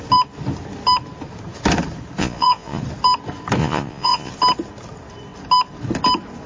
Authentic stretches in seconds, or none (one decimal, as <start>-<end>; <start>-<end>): 0.0-2.2; 2.8-3.6; 4.3-6.5